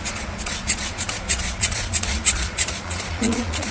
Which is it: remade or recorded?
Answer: remade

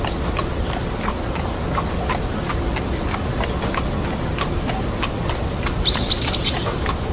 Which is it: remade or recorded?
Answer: recorded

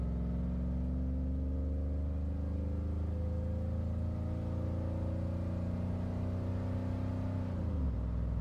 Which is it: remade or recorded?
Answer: recorded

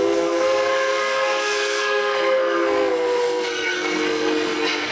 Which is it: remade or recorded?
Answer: remade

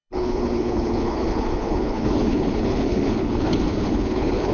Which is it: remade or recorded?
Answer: remade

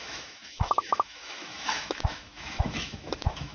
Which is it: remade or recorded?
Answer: remade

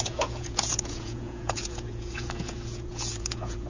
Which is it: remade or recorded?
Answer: remade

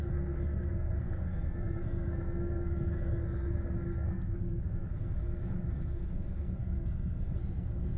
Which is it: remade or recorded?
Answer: remade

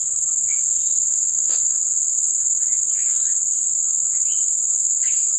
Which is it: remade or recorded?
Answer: remade